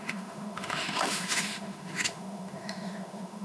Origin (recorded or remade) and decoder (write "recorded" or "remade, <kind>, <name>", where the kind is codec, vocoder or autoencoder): remade, autoencoder, DAC-VAE